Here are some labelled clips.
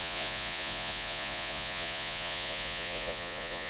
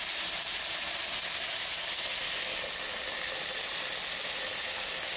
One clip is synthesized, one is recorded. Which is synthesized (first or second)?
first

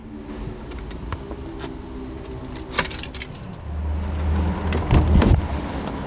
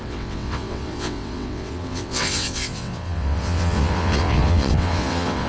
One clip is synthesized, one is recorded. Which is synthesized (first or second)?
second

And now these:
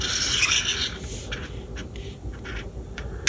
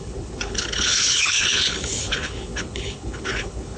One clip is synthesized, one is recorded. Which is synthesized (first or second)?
second